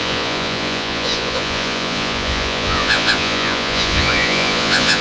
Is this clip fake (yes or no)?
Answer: yes